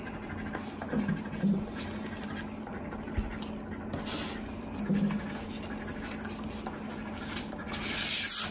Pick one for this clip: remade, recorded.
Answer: recorded